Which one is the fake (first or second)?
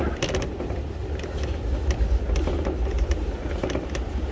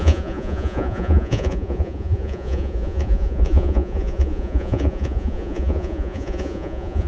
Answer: second